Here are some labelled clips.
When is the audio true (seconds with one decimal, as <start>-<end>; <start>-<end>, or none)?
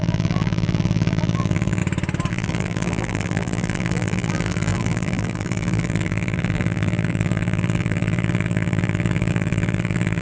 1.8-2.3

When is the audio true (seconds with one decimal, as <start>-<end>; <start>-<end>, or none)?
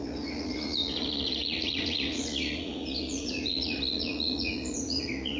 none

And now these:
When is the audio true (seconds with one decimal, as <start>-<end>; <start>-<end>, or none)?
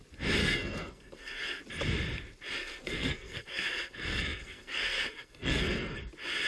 0.0-0.4; 1.6-2.6; 6.0-6.5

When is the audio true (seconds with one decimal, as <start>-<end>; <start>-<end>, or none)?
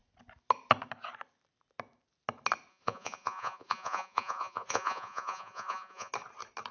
0.0-2.7; 6.1-6.7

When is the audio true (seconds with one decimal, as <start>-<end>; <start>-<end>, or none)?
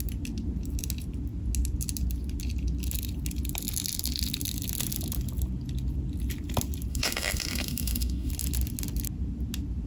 0.0-6.9; 8.3-9.9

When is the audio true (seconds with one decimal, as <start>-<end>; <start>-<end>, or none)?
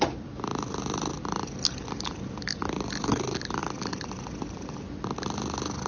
0.0-5.9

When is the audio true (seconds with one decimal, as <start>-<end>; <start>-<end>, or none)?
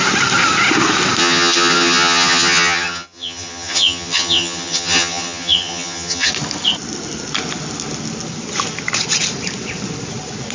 0.0-1.2; 6.3-10.5